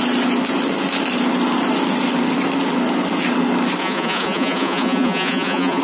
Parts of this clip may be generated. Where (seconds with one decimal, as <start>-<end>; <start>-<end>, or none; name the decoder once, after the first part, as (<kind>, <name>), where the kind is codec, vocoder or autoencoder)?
3.8-5.8 (vocoder, Vocos)